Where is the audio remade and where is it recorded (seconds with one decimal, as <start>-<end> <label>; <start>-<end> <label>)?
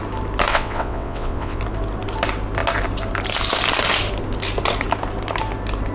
0.0-0.5 recorded; 0.5-1.6 remade; 1.6-5.9 recorded